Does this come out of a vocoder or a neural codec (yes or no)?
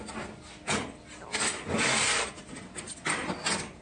no